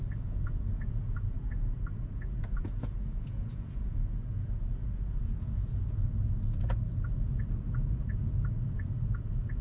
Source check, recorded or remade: remade